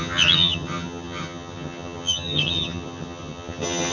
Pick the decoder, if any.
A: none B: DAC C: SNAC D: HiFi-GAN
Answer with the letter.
D